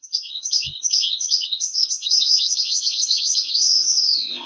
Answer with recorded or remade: remade